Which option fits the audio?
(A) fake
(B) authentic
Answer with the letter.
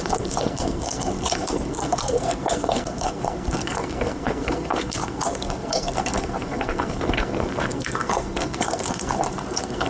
A